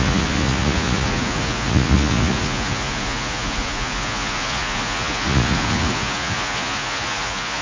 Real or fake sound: fake